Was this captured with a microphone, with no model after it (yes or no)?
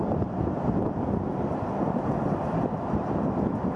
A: yes